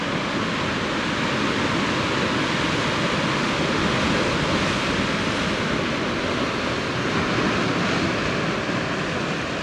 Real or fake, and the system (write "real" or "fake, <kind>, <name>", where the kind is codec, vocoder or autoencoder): real